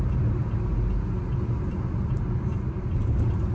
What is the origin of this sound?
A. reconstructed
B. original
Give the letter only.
B